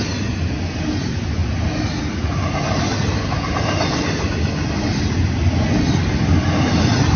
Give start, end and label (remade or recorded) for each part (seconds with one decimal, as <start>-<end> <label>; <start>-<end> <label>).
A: 0.0-7.2 recorded